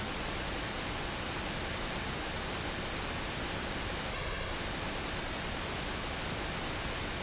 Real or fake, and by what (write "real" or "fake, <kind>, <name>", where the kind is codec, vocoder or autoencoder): real